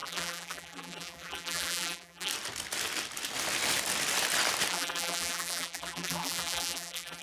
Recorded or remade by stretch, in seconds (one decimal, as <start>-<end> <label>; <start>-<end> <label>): 0.0-2.3 remade; 2.3-4.7 recorded; 4.7-7.2 remade

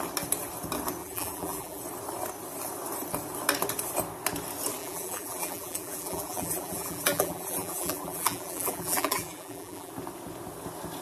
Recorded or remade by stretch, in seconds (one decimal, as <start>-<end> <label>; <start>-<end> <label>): 0.0-1.0 recorded; 1.0-1.8 remade; 1.8-4.8 recorded; 4.8-9.9 remade; 9.9-11.0 recorded

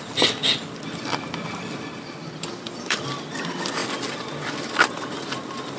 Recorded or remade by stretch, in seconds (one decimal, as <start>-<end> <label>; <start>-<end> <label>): 0.0-0.4 remade; 0.4-1.2 recorded; 1.2-3.8 remade; 3.8-5.8 recorded

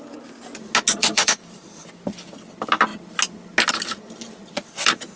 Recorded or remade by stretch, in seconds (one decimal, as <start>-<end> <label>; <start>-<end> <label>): 0.0-1.0 recorded; 1.0-1.8 remade; 1.8-5.2 recorded

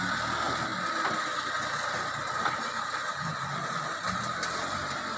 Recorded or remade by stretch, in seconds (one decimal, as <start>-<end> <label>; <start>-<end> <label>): 0.0-5.2 recorded

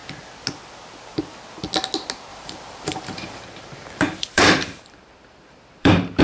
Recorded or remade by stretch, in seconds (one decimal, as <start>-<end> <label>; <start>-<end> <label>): 0.0-2.3 recorded; 2.3-6.2 remade

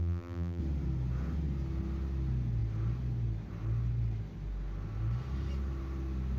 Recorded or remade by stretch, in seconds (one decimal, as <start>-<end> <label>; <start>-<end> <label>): 0.0-0.6 remade; 0.6-6.4 recorded

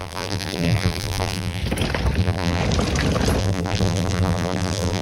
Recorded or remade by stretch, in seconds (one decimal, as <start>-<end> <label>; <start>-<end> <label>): 0.0-1.6 remade; 1.6-2.2 recorded; 2.2-2.6 remade; 2.6-3.4 recorded; 3.4-5.0 remade